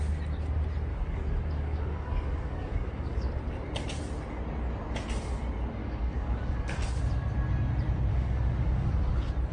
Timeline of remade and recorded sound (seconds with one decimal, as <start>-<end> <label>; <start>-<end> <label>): 0.0-0.9 recorded; 0.9-3.3 remade; 3.3-5.8 recorded; 5.8-7.0 remade; 7.0-8.1 recorded; 8.1-9.1 remade; 9.1-9.5 recorded